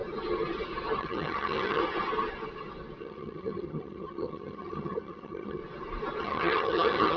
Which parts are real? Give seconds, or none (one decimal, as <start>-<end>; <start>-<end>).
0.0-1.0; 1.8-3.0; 5.6-6.2